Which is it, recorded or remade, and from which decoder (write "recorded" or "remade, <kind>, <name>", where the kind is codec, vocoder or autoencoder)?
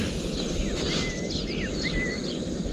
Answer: recorded